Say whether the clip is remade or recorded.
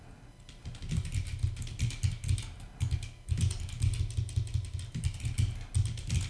recorded